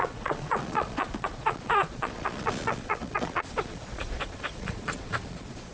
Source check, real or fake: fake